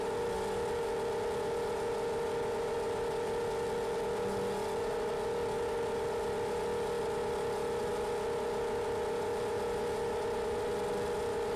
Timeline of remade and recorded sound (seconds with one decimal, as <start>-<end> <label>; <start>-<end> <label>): 0.0-11.6 recorded

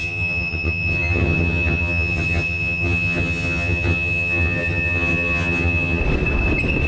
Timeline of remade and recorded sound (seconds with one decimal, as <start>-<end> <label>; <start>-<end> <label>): 0.0-6.0 remade; 6.0-6.9 recorded